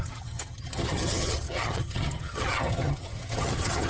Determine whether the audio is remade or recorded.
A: remade